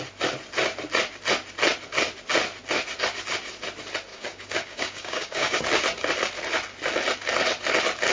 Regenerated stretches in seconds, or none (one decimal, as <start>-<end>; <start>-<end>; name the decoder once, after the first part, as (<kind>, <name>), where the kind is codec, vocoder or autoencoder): 4.1-5.6 (codec, DAC)